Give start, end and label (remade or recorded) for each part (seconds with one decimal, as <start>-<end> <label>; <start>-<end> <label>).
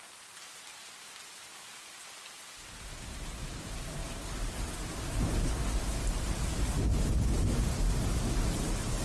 0.0-9.0 recorded